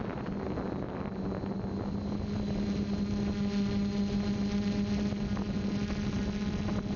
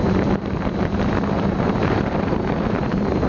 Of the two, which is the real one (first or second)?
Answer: first